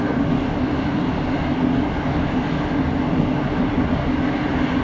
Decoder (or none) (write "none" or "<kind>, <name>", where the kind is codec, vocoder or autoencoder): none